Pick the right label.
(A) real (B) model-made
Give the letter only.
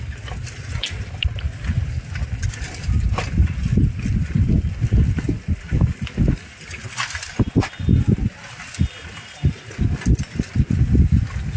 A